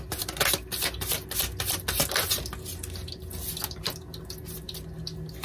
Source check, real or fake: real